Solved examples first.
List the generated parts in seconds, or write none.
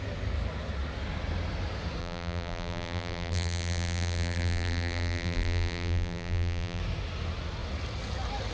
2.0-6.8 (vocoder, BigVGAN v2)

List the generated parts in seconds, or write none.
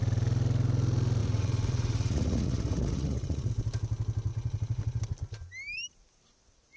1.2-3.5 (vocoder, Vocos); 4.3-5.0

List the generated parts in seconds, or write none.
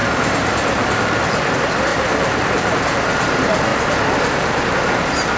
0.0-1.5 (vocoder, BigVGAN v2); 1.9-2.7; 3.7-4.7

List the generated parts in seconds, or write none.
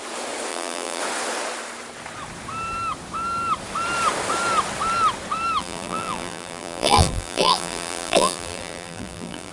0.5-1.0 (vocoder, BigVGAN v2); 5.6-9.5